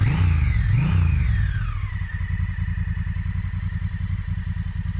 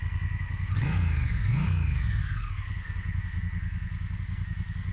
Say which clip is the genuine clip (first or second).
first